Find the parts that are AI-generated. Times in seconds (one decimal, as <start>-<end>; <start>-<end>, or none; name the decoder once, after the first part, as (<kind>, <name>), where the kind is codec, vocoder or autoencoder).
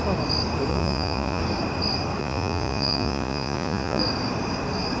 0.7-1.4 (vocoder, Vocos); 2.2-4.0